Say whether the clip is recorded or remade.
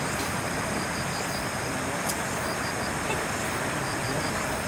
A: recorded